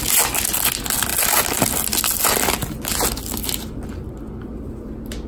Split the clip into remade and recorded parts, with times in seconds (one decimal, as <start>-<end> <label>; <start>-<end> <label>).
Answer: 0.0-5.3 recorded